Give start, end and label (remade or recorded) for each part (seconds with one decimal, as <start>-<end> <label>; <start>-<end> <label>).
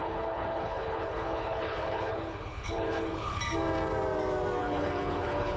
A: 0.0-3.4 remade; 3.4-4.6 recorded; 4.6-5.6 remade